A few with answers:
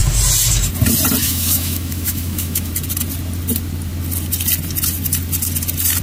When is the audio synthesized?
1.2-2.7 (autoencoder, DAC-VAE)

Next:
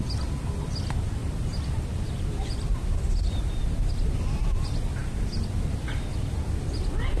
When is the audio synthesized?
none

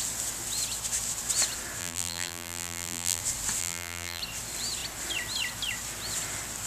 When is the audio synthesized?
1.8-3.2 (vocoder, BigVGAN v2); 3.6-4.2

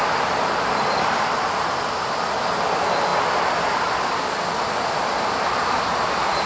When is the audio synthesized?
none

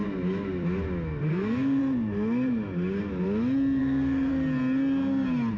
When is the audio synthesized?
1.3-1.8 (codec, SNAC); 3.8-4.3